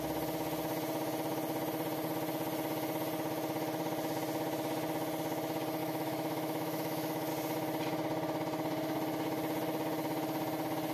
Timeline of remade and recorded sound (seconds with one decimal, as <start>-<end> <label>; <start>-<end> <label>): 0.0-5.8 recorded; 5.8-7.3 remade; 7.3-10.9 recorded